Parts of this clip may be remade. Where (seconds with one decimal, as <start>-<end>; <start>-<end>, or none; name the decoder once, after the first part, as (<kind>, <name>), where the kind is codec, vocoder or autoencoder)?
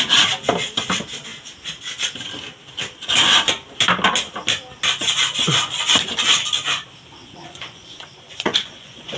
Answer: 7.2-9.2 (vocoder, Vocos)